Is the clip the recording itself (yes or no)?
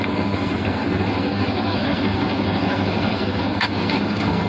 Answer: no